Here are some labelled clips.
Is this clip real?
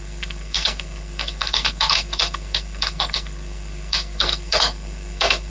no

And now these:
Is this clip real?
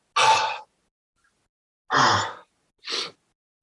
yes